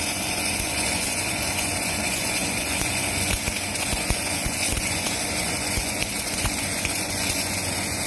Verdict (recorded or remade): remade